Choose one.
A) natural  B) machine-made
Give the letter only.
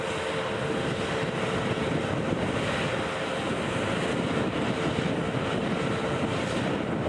A